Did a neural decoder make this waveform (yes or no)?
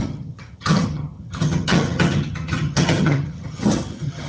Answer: yes